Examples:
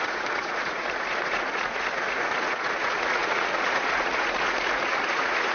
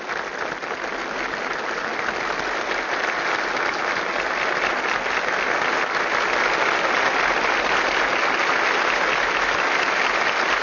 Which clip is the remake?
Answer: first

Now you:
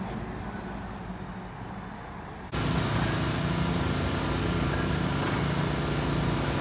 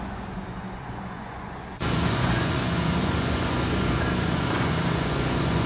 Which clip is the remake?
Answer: second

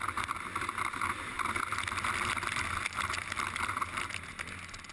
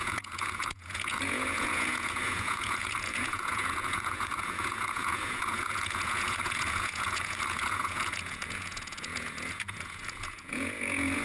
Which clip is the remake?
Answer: second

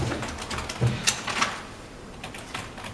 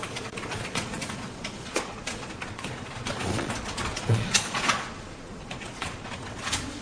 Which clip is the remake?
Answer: second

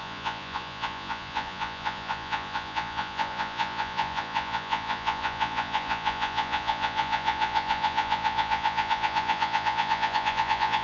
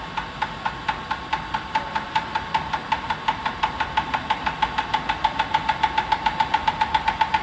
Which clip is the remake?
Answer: first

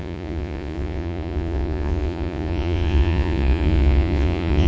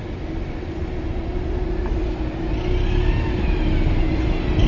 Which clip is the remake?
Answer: first